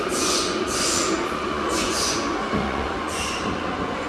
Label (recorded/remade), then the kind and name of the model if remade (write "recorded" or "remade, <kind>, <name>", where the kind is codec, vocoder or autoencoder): remade, vocoder, Vocos